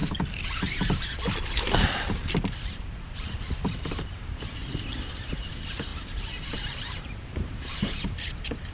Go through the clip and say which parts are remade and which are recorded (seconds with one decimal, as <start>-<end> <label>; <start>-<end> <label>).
0.0-1.8 recorded; 1.8-4.6 remade; 4.6-5.5 recorded; 5.5-8.7 remade